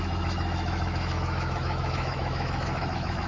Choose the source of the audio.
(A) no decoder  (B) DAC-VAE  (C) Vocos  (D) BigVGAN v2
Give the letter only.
B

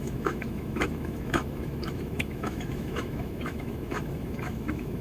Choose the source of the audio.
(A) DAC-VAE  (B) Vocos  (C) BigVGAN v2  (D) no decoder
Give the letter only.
A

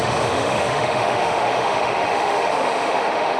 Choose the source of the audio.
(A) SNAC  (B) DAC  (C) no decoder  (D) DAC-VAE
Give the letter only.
D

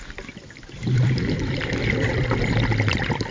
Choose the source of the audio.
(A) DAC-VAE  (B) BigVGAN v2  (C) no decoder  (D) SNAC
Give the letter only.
C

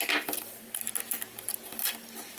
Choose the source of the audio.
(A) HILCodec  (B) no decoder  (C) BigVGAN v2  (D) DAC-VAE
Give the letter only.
B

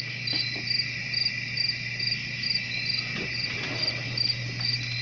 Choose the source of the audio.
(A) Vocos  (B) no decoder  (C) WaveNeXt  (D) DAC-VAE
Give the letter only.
B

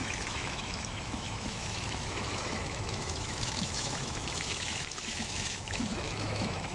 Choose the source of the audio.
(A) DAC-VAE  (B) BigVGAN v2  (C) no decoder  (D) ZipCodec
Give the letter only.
A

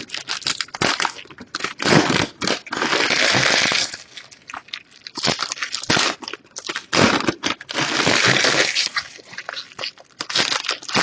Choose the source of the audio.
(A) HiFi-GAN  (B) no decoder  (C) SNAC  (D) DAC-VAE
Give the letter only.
B